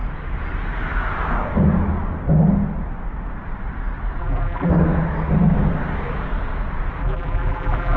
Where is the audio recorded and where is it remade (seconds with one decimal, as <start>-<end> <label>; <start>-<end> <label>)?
0.0-4.2 recorded; 4.2-4.7 remade; 4.7-7.0 recorded; 7.0-8.0 remade

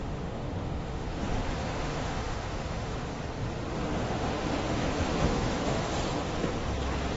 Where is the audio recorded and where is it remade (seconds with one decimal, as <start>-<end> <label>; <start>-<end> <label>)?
0.0-3.1 remade; 3.1-4.0 recorded; 4.0-5.9 remade; 5.9-7.2 recorded

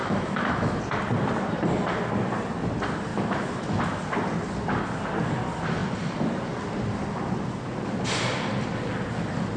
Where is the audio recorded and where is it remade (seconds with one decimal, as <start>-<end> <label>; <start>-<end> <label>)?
0.0-0.8 remade; 0.8-3.1 recorded; 3.1-4.0 remade; 4.0-9.6 recorded

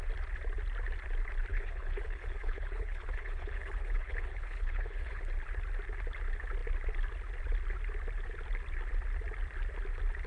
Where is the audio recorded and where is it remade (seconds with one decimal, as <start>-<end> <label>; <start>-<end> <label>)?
0.0-1.5 recorded; 1.5-5.2 remade; 5.2-10.3 recorded

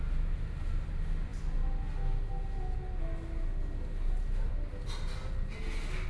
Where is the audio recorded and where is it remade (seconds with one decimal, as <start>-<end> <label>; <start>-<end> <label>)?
0.0-6.1 recorded

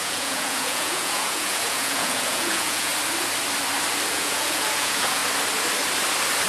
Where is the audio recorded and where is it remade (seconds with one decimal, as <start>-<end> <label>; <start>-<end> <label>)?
0.0-2.9 remade; 2.9-4.1 recorded; 4.1-5.2 remade; 5.2-6.5 recorded